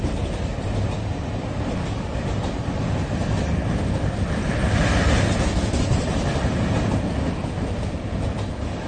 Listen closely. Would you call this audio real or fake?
real